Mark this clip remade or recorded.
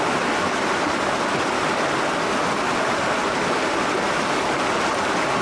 recorded